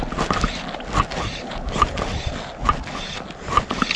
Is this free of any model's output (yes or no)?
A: yes